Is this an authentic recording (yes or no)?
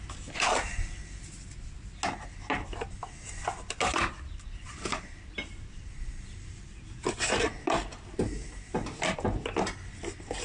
yes